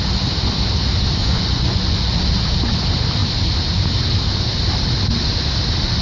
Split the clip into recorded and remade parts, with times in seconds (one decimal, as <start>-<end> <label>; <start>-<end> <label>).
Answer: 0.0-1.2 recorded; 1.2-2.2 remade; 2.2-6.0 recorded

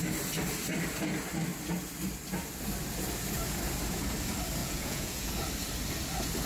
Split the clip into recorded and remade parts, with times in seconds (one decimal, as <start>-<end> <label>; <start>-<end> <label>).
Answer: 0.0-4.6 recorded; 4.6-5.3 remade; 5.3-6.5 recorded

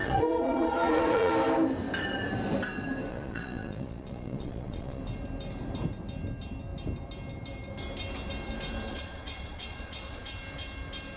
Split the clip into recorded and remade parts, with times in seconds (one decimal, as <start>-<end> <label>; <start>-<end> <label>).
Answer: 0.0-1.3 remade; 1.3-3.1 recorded; 3.1-5.0 remade; 5.0-8.9 recorded; 8.9-10.2 remade; 10.2-11.2 recorded

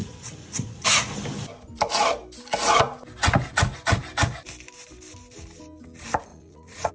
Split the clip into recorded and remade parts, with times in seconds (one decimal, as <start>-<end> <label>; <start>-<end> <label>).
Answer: 0.0-1.0 remade; 1.0-6.3 recorded; 6.3-6.9 remade

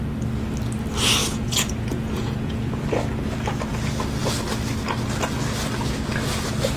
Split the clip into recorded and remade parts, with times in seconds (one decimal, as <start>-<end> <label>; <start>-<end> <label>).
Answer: 0.0-1.2 recorded; 1.2-2.8 remade; 2.8-6.8 recorded

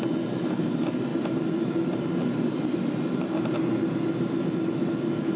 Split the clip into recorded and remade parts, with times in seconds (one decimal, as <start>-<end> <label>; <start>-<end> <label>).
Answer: 0.0-5.4 recorded

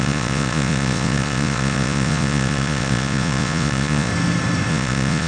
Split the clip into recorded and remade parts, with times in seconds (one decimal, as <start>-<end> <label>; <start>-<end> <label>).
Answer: 0.0-4.1 remade; 4.1-4.7 recorded; 4.7-5.3 remade

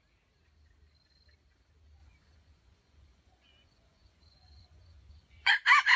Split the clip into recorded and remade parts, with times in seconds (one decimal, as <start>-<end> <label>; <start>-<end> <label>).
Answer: 0.0-2.0 recorded; 2.0-5.5 remade; 5.5-6.0 recorded